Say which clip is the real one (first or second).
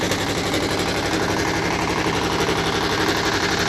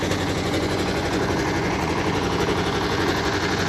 first